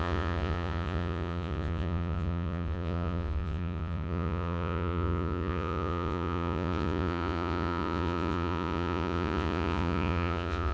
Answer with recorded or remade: remade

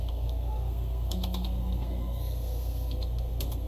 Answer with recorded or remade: remade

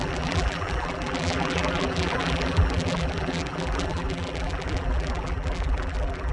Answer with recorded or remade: remade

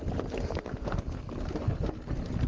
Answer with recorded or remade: recorded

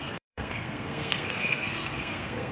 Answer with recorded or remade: remade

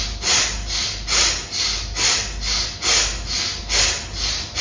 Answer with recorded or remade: recorded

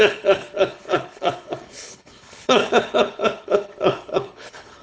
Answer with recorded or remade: remade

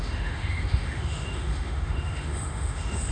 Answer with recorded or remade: remade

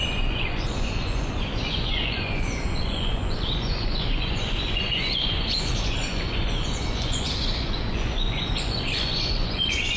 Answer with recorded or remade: remade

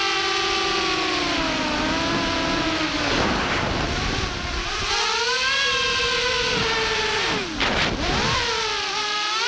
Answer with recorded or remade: recorded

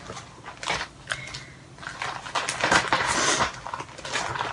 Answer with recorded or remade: recorded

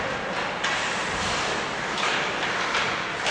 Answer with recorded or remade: recorded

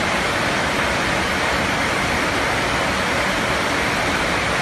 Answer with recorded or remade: recorded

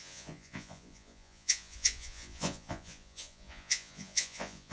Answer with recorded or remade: remade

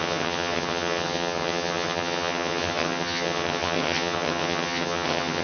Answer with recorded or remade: remade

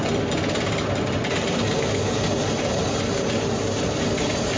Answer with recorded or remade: recorded